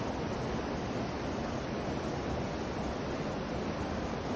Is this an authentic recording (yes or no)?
yes